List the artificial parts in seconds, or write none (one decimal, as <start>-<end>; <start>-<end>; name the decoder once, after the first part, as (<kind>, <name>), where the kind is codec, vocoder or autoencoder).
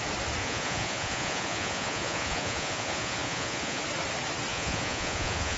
0.4-3.8 (vocoder, Vocos); 4.5-5.6